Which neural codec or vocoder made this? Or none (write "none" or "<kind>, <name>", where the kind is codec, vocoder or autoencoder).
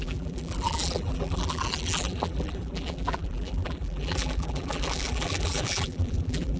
vocoder, BigVGAN v2